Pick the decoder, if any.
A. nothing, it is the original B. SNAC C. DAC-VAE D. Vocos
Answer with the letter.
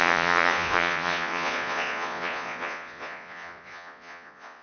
D